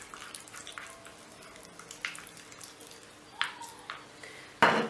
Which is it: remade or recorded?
recorded